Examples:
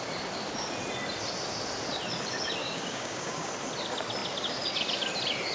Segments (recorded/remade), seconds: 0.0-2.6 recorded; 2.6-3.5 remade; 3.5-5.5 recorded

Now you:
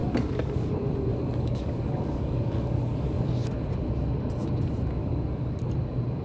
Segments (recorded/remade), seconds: 0.0-0.7 remade; 0.7-1.1 recorded; 1.1-3.2 remade; 3.2-5.0 recorded; 5.0-5.7 remade; 5.7-6.2 recorded

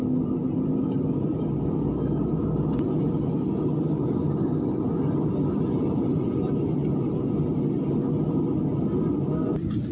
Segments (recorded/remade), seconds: 0.0-9.9 recorded